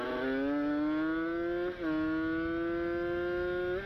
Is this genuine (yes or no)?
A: yes